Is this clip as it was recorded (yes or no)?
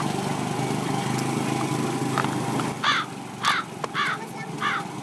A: yes